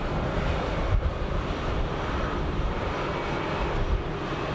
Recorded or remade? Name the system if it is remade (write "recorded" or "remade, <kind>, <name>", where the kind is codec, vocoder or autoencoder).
recorded